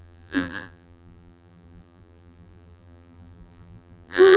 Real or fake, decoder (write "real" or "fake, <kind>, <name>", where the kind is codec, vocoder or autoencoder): fake, vocoder, BigVGAN v2